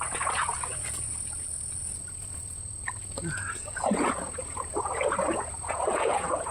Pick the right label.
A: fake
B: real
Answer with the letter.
A